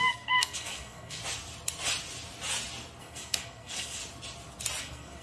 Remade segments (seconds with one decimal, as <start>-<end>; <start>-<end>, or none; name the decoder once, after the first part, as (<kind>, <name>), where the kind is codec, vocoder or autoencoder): 0.0-1.2 (codec, SNAC); 3.0-4.0; 4.8-5.2